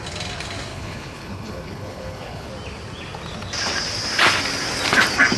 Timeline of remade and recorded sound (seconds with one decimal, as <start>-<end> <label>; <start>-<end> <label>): 0.0-0.7 recorded; 0.7-2.5 remade; 2.5-5.4 recorded